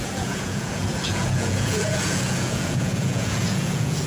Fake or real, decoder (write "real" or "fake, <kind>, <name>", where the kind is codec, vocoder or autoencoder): fake, vocoder, Vocos